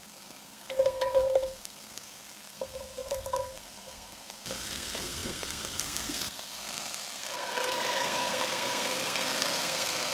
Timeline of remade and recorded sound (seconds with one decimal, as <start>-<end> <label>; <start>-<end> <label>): 0.0-10.1 remade